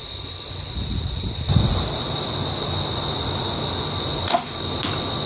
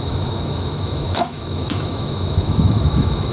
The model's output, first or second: second